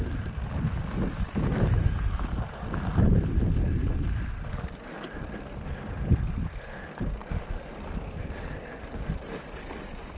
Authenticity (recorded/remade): recorded